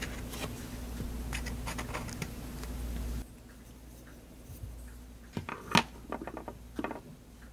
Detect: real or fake real